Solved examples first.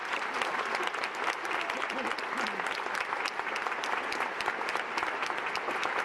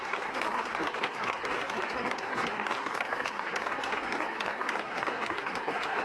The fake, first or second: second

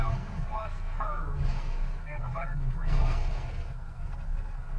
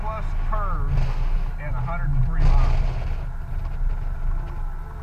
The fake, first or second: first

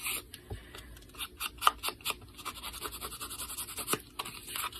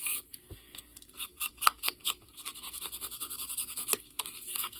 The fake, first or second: second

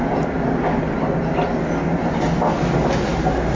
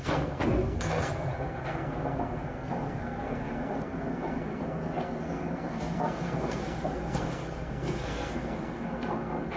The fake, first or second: second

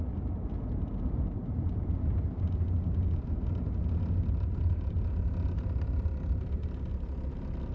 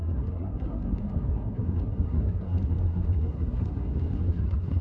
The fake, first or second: second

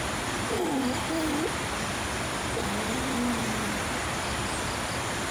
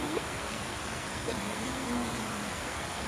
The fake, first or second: second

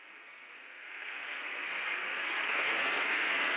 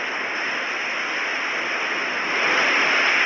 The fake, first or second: first